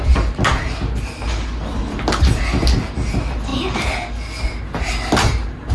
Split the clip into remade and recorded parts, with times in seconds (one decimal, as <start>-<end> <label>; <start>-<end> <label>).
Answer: 0.0-5.7 recorded